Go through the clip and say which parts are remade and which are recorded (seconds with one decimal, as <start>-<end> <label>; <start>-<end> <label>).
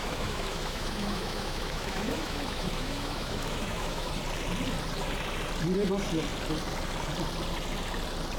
0.0-4.1 remade; 4.1-8.4 recorded